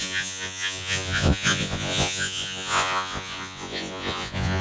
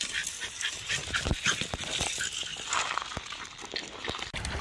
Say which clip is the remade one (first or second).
first